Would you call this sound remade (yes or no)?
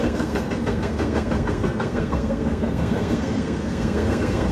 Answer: yes